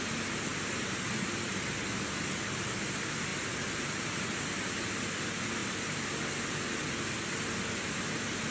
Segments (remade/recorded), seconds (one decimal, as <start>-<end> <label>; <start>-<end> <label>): 0.0-0.5 recorded; 0.5-1.1 remade; 1.1-3.3 recorded; 3.3-4.4 remade; 4.4-5.6 recorded; 5.6-6.1 remade; 6.1-8.5 recorded